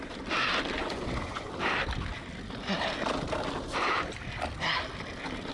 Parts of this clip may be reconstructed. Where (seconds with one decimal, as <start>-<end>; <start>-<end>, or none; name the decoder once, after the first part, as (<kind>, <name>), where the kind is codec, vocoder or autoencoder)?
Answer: 0.8-1.5 (vocoder, Vocos)

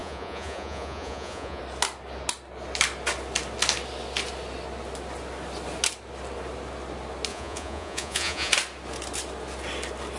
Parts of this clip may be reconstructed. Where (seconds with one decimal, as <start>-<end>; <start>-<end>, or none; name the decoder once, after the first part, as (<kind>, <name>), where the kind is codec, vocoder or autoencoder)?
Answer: 0.0-1.6 (vocoder, Vocos); 7.3-8.5

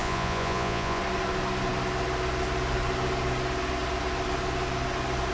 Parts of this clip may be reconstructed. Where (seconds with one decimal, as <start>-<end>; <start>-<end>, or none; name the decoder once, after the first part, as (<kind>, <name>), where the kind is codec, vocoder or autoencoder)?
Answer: 0.0-1.0 (vocoder, Vocos)

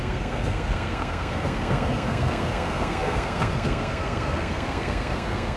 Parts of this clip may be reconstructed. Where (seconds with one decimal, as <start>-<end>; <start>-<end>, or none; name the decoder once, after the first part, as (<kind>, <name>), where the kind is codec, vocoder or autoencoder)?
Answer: 0.0-5.6 (codec, SNAC)

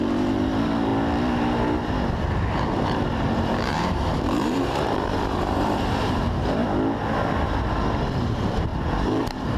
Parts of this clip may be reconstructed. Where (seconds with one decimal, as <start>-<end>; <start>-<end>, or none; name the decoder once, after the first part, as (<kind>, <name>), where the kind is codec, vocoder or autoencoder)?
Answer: 0.0-0.9 (vocoder, BigVGAN v2); 2.3-6.6; 8.2-9.6